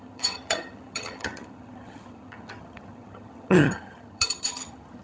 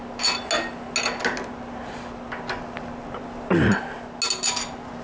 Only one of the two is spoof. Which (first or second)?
first